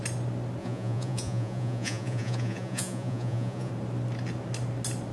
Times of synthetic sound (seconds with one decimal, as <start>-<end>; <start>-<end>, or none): 0.6-3.7